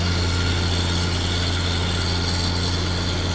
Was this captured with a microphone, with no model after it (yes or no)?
yes